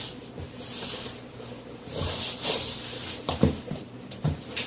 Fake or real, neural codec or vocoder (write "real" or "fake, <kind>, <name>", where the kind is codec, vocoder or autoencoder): real